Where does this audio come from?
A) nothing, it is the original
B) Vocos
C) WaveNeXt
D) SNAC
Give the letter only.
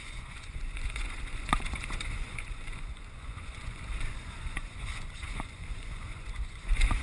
B